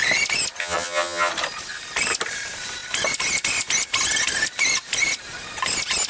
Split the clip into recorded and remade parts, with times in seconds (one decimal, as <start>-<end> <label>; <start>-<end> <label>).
0.0-0.6 recorded; 0.6-1.3 remade; 1.3-6.1 recorded